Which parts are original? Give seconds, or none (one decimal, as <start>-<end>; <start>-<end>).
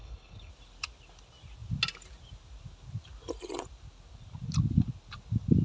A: 0.5-5.6